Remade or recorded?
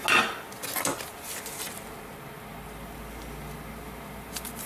recorded